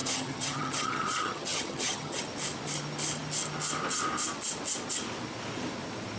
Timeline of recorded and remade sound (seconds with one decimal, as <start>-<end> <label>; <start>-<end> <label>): 0.0-2.2 remade; 2.2-6.2 recorded